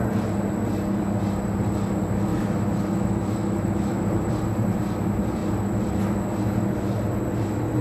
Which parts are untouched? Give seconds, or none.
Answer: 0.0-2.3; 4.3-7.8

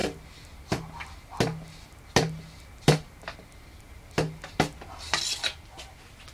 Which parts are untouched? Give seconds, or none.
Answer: 0.0-6.3

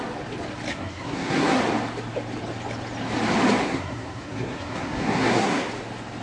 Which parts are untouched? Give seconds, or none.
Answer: 0.0-0.7; 1.6-3.6; 5.7-6.2

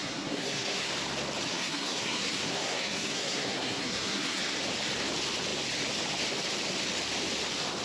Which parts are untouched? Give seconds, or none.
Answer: 0.9-1.5; 4.4-7.8

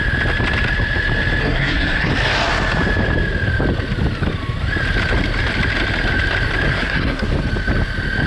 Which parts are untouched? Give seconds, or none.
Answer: 0.0-1.4; 2.1-6.7; 7.3-8.3

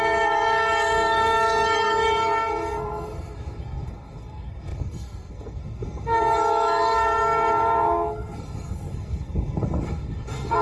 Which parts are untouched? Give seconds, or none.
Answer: none